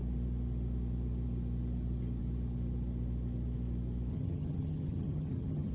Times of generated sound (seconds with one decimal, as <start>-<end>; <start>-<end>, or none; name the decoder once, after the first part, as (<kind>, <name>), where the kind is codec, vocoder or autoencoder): 4.1-5.7 (vocoder, HiFi-GAN)